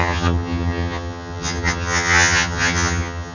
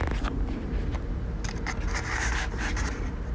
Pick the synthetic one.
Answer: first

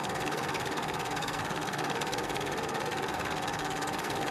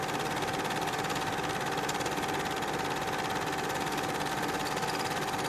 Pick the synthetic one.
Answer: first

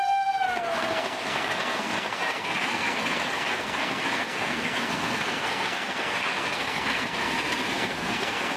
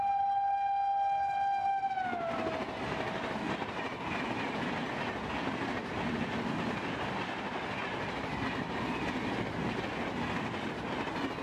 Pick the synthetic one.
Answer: first